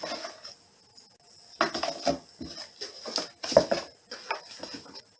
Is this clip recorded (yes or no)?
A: yes